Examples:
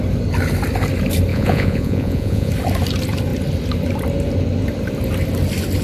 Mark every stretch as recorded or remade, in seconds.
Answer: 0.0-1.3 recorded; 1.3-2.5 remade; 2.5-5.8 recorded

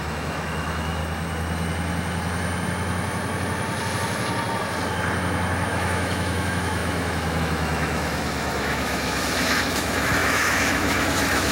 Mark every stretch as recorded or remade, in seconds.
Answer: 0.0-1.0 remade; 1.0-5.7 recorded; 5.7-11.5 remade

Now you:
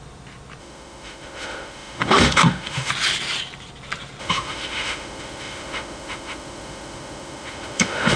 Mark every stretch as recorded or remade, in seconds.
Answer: 0.0-0.6 recorded; 0.6-2.9 remade; 2.9-4.2 recorded; 4.2-8.2 remade